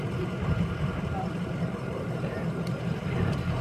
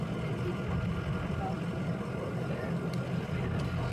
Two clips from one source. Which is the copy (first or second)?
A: first